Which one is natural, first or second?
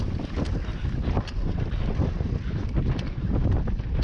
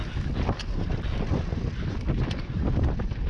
second